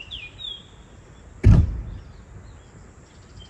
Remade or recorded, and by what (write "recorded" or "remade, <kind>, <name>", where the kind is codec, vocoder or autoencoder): recorded